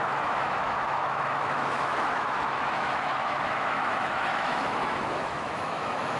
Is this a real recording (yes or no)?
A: no